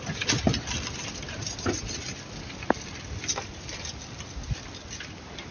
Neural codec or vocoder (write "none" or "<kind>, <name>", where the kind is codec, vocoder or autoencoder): none